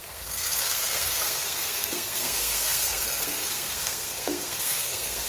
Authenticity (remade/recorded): remade